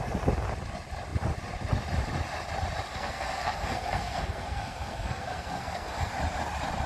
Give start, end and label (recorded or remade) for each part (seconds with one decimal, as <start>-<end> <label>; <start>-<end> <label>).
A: 0.0-2.9 recorded; 2.9-6.1 remade; 6.1-6.9 recorded